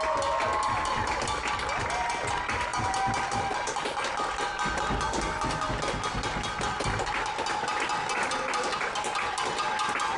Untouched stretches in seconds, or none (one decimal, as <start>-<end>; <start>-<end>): 0.0-10.2